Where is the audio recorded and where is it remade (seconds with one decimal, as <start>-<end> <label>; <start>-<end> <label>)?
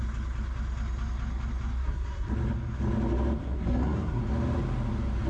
0.0-1.8 recorded; 1.8-2.3 remade; 2.3-3.4 recorded; 3.4-4.2 remade; 4.2-5.3 recorded